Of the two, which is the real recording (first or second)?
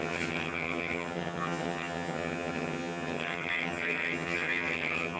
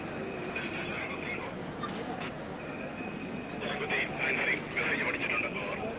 second